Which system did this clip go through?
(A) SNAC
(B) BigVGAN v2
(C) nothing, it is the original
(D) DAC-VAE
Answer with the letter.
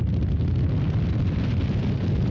C